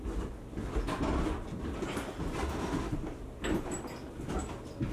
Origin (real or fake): real